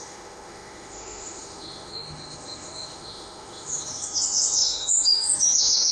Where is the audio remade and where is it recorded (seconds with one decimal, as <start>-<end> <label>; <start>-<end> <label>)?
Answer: 0.0-5.9 remade